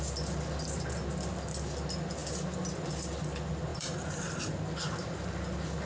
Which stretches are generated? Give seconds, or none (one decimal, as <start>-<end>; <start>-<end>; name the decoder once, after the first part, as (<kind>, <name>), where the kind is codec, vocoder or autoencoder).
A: 3.7-4.5 (vocoder, BigVGAN v2)